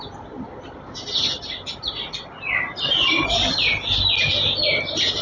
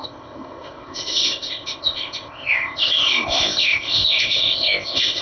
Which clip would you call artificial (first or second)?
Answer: second